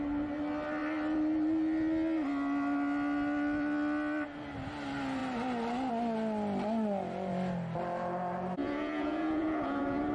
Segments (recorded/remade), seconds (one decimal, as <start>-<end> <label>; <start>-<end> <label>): 0.0-8.6 recorded; 8.6-10.1 remade